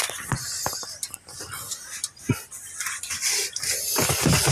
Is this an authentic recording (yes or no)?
yes